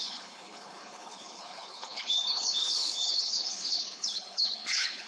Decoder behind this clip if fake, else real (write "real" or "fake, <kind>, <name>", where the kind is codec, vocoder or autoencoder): fake, codec, HILCodec